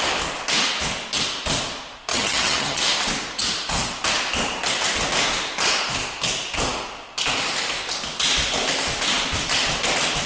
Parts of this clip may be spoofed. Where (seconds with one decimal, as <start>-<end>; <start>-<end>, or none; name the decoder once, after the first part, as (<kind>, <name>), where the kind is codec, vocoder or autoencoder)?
2.1-2.8 (vocoder, HiFi-GAN)